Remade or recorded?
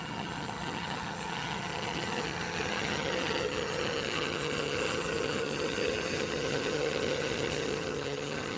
remade